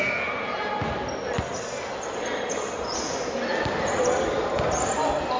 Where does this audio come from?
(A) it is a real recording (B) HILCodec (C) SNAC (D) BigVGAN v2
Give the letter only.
D